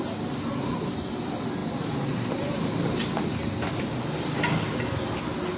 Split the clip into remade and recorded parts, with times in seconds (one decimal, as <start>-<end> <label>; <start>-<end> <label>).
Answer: 0.0-5.6 recorded